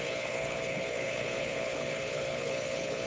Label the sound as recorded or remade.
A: remade